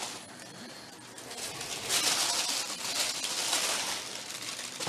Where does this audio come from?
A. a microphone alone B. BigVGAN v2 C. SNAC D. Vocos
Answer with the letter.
A